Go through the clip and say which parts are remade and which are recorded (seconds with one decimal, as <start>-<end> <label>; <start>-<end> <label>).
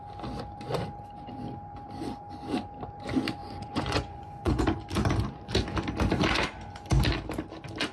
0.0-3.4 recorded; 3.4-4.6 remade; 4.6-7.9 recorded